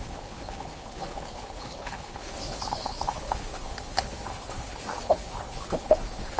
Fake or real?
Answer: fake